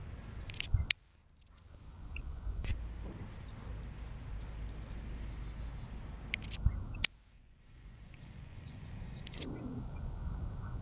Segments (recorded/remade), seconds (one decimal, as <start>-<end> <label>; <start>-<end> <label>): 0.0-1.8 recorded; 1.8-2.7 remade; 2.7-7.3 recorded; 7.3-10.8 remade